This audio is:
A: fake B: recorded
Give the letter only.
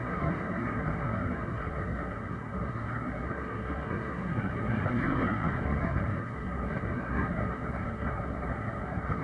A